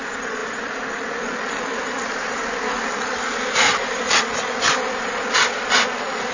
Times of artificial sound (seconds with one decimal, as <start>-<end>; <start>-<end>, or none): 0.4-4.2